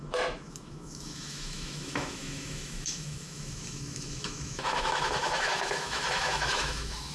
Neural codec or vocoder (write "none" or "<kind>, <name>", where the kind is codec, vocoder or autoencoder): autoencoder, DAC-VAE